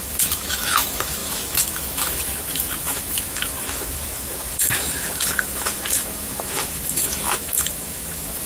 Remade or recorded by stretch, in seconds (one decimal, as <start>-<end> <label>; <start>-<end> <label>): 0.0-8.5 remade

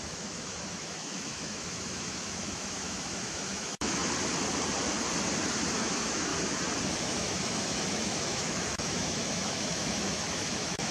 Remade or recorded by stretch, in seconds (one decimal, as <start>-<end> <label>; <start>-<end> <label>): 0.0-4.0 remade; 4.0-5.8 recorded; 5.8-6.3 remade; 6.3-7.0 recorded; 7.0-10.9 remade

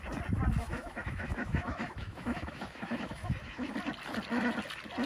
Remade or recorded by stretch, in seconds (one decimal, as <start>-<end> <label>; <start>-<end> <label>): 0.0-0.6 recorded; 0.6-3.7 remade; 3.7-5.1 recorded

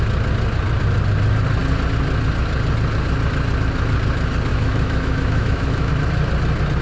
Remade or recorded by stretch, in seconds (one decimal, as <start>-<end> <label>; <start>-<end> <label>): 0.0-4.5 recorded; 4.5-5.9 remade; 5.9-6.8 recorded

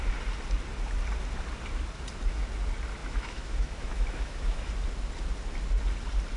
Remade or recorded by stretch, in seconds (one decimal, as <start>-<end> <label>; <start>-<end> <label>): 0.0-3.0 recorded; 3.0-4.7 remade; 4.7-6.4 recorded